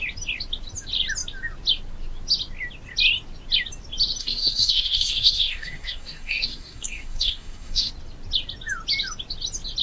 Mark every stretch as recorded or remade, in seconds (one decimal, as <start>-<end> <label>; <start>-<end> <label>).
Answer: 0.0-4.2 recorded; 4.2-7.9 remade; 7.9-9.8 recorded